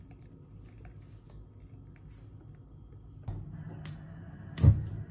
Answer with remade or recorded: recorded